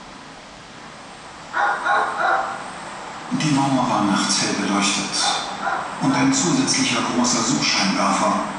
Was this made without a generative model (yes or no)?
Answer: yes